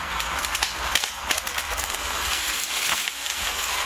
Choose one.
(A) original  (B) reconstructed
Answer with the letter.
B